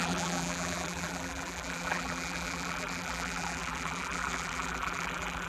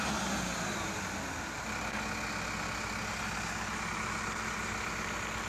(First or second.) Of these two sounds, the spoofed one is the first